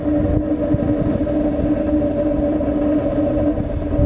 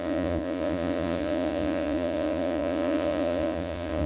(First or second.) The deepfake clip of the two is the second